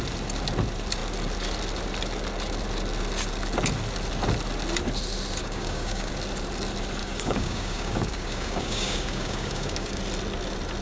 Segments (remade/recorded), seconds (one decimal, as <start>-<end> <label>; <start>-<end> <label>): 0.0-5.4 recorded; 5.4-6.1 remade; 6.1-7.0 recorded; 7.0-10.0 remade; 10.0-10.8 recorded